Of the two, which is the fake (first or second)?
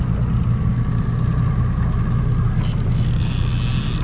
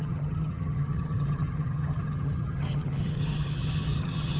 second